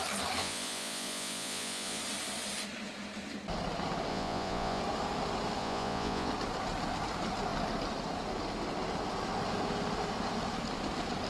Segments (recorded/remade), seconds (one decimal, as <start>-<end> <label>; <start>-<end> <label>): 0.0-0.4 recorded; 0.4-2.0 remade; 2.0-4.1 recorded; 4.1-4.8 remade; 4.8-5.6 recorded; 5.6-6.3 remade; 6.3-11.3 recorded